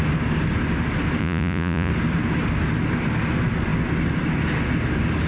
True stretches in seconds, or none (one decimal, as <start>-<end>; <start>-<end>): 0.0-1.2; 1.9-5.3